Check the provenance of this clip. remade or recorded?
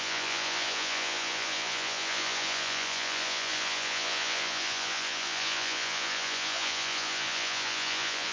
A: remade